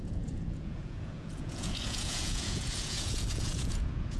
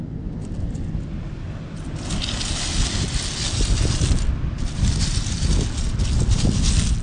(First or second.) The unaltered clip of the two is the second